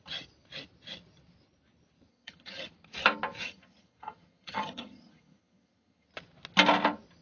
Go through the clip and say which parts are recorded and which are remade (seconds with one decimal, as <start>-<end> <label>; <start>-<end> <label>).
0.0-2.1 recorded; 2.1-2.7 remade; 2.7-3.4 recorded; 3.4-6.1 remade; 6.1-7.2 recorded